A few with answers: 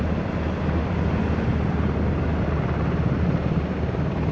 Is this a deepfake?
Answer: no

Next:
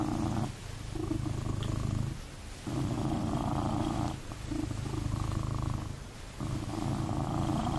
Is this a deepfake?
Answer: no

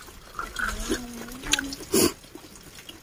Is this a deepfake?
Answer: no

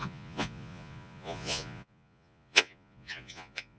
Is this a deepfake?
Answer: yes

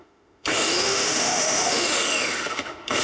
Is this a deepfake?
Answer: yes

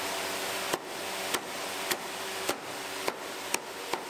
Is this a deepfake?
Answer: no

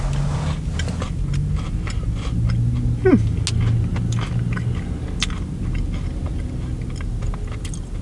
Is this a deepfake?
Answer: no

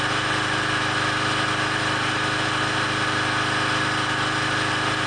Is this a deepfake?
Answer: no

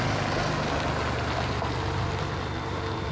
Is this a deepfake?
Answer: no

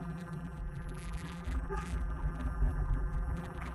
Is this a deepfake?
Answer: yes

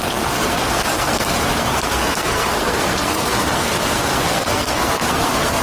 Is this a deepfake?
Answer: yes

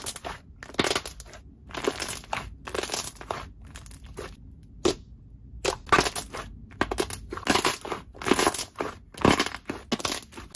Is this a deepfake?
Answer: no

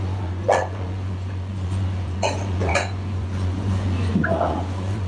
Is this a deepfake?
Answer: yes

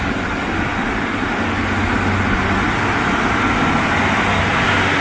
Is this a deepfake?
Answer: no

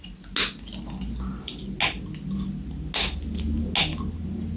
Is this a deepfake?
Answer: no